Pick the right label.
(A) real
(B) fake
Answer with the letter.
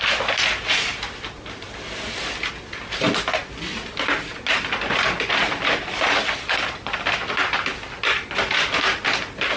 A